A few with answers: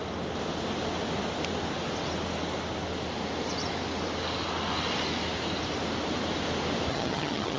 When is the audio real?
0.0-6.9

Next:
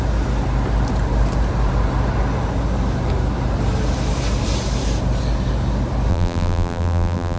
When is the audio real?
0.0-6.1

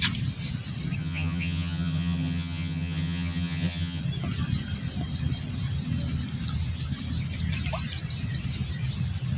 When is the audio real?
0.0-1.0; 4.0-9.4

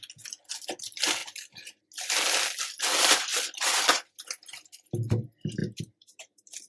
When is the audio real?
0.0-1.2; 1.8-5.6

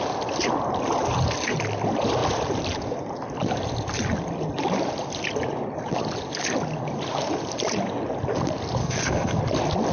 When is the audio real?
0.0-8.8; 9.4-9.9

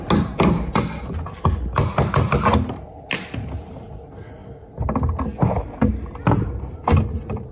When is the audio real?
0.0-7.5

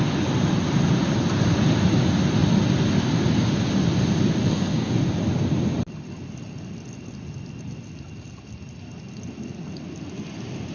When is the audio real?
0.0-4.4; 4.9-10.7